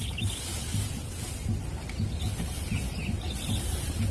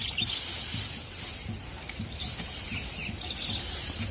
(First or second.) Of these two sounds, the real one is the first